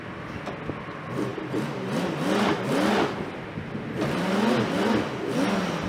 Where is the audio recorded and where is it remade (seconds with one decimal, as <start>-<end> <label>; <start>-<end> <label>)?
0.0-5.9 recorded